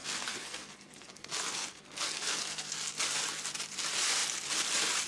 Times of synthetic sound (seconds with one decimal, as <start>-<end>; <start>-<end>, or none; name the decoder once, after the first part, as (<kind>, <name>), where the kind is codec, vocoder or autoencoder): 0.0-3.0 (codec, SNAC)